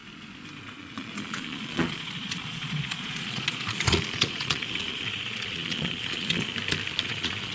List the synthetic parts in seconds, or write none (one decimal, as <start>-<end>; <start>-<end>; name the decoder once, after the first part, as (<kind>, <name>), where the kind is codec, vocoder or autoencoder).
0.6-6.5 (vocoder, Vocos); 7.0-7.5